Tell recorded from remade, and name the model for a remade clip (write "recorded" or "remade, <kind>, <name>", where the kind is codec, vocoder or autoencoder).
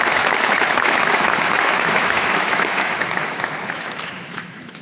remade, autoencoder, DAC-VAE